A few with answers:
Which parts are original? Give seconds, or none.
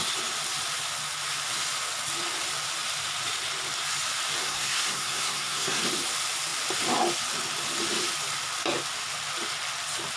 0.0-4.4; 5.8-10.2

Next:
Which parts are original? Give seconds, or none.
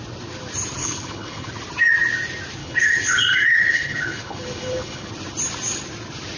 0.0-0.8; 1.5-2.6; 5.1-6.4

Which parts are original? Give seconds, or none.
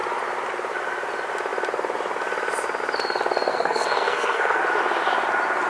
0.0-3.5; 4.6-5.7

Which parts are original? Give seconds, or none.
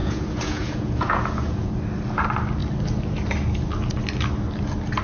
1.7-5.0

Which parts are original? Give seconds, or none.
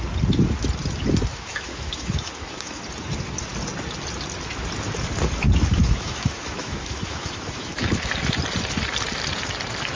0.0-1.3; 2.8-5.8; 8.1-10.0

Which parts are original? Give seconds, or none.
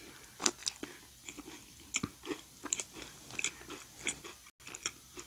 0.0-5.3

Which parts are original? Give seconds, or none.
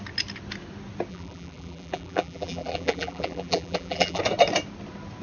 0.0-1.1; 4.2-5.2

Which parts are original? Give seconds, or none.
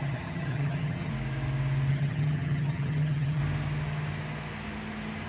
1.1-1.9; 3.4-5.3